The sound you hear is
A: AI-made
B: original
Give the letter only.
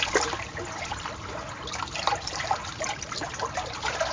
B